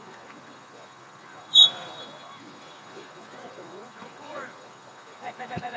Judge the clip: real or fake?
fake